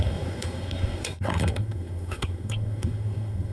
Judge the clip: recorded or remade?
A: remade